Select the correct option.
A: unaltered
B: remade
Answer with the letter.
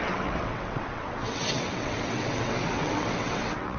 B